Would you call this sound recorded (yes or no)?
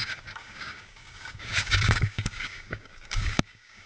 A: no